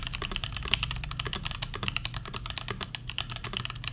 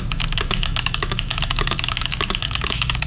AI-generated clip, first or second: second